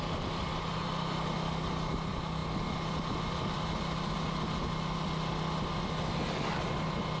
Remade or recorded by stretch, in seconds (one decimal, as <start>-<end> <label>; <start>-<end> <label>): 0.0-7.2 recorded